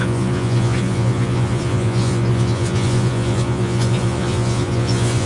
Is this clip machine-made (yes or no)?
yes